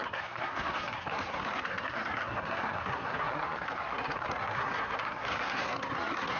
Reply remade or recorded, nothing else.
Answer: remade